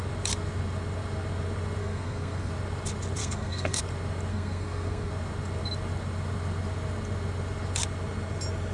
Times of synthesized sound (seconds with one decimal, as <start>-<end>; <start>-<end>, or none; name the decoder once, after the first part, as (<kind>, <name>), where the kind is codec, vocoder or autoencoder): 1.8-2.5 (codec, SNAC); 3.2-3.8; 4.3-5.1